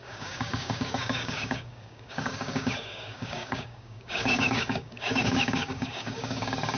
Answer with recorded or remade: remade